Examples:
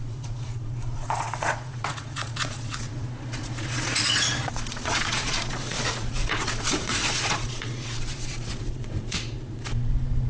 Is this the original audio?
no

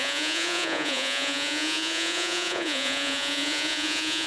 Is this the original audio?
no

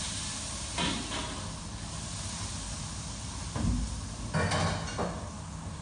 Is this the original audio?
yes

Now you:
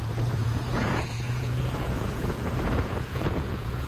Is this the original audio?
no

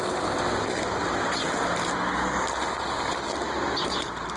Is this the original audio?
yes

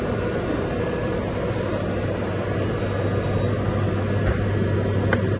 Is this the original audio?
yes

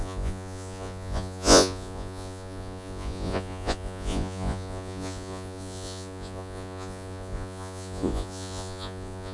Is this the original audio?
no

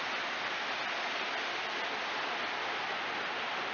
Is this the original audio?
yes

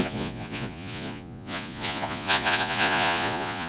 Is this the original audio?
no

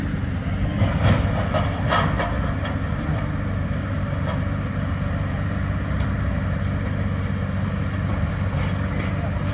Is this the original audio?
yes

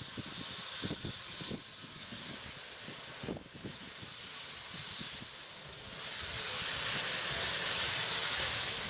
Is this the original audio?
yes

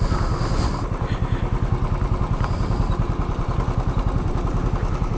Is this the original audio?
yes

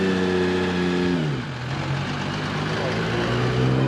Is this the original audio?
yes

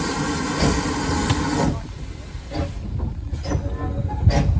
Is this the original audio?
yes